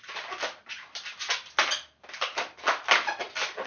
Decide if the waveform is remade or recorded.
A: recorded